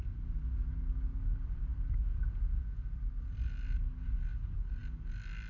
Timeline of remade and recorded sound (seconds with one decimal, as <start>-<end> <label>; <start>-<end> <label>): 0.0-5.5 recorded